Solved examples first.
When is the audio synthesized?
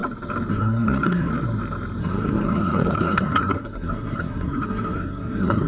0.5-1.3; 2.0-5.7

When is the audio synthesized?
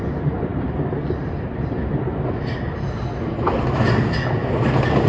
none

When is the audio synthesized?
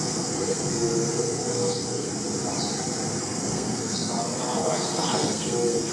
0.0-2.1; 3.2-5.9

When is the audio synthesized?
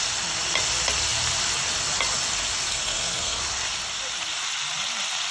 2.7-3.4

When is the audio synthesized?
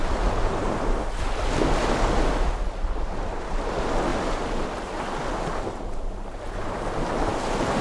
none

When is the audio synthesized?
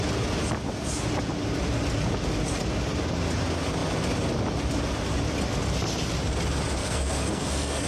6.8-7.9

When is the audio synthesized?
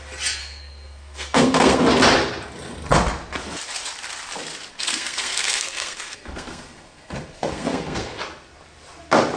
0.4-1.8; 4.7-8.2